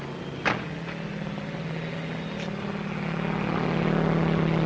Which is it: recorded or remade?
recorded